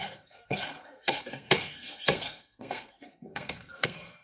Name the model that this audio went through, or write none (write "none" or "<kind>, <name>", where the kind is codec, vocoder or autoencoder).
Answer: codec, SNAC